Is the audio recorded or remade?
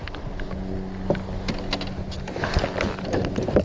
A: recorded